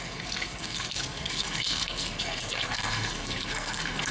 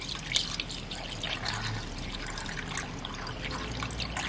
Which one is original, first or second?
second